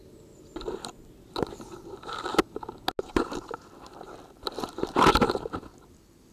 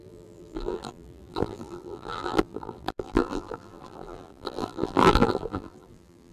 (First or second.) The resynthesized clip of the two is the second